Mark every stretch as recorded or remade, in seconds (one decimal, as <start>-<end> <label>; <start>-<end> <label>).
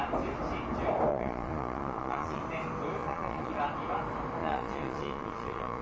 0.0-1.1 recorded; 1.1-2.4 remade; 2.4-3.0 recorded; 3.0-3.6 remade; 3.6-4.4 recorded; 4.4-5.8 remade